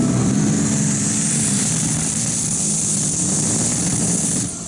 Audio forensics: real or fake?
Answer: real